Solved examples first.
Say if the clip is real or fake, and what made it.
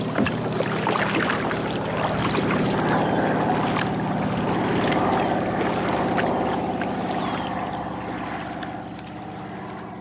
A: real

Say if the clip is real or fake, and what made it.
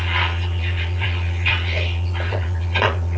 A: fake, vocoder, Vocos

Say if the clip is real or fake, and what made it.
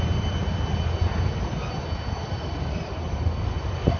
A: real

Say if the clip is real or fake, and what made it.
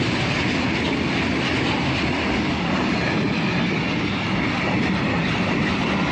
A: real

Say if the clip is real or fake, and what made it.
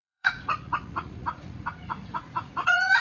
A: fake, vocoder, Vocos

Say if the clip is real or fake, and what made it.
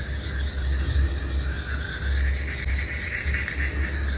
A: real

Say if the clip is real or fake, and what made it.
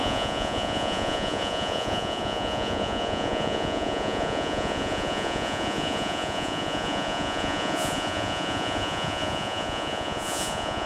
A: fake, vocoder, Vocos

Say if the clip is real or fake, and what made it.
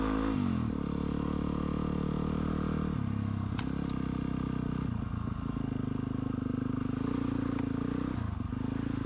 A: real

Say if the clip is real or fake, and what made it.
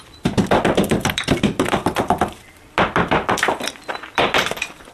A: real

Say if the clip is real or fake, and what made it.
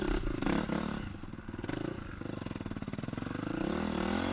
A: real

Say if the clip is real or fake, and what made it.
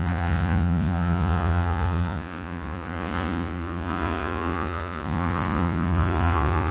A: fake, vocoder, Vocos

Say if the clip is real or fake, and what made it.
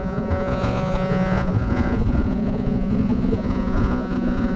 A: fake, vocoder, Vocos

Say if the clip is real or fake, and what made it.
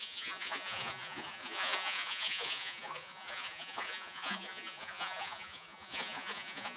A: fake, vocoder, Vocos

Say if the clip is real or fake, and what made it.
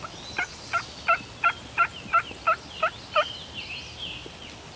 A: real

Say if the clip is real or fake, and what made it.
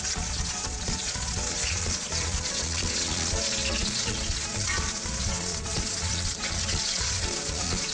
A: fake, vocoder, Vocos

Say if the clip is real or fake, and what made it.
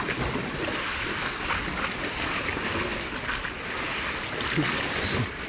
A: real